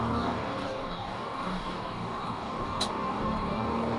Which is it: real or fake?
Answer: fake